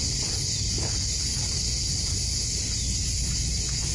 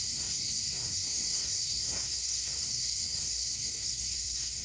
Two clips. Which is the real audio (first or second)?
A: first